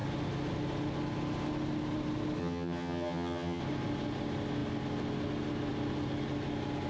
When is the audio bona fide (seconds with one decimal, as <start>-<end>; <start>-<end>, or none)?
0.0-2.4; 3.6-6.9